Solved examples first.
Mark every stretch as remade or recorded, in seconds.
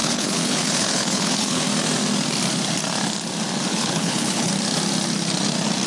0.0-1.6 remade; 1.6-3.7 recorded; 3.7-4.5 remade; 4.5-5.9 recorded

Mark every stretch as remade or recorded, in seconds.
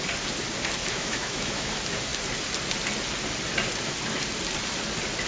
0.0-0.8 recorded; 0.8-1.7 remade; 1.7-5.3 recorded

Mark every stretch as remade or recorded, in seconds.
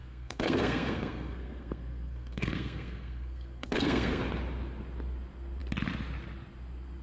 0.0-4.2 remade; 4.2-7.0 recorded